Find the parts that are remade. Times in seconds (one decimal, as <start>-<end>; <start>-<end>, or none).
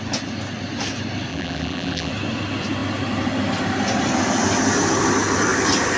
1.3-2.1